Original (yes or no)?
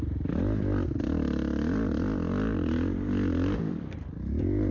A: yes